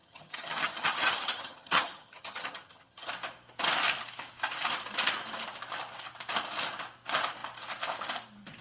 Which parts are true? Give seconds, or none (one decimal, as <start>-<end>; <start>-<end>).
3.1-8.6